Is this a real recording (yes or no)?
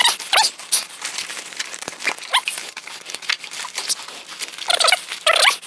no